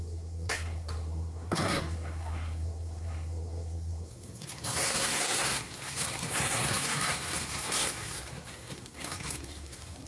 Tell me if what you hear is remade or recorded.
remade